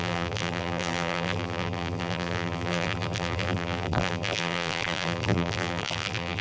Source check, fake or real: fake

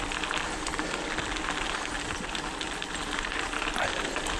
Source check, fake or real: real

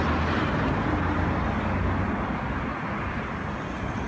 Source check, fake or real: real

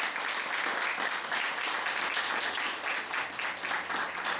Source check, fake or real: real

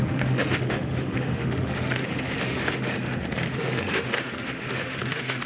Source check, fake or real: fake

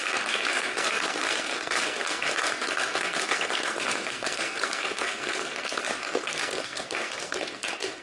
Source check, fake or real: fake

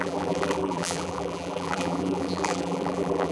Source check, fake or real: fake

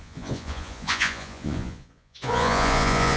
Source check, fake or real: fake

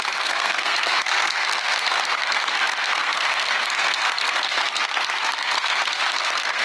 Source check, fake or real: fake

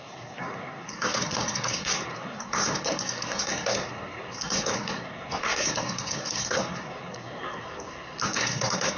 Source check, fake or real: fake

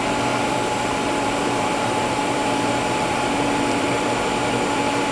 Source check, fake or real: fake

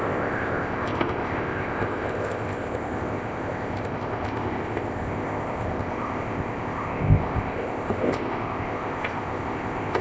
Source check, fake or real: fake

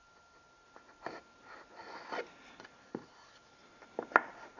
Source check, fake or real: real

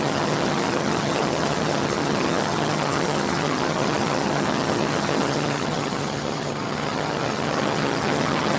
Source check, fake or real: fake